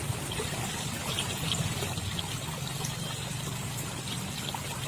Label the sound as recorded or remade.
recorded